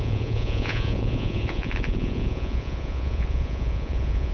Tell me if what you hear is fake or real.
fake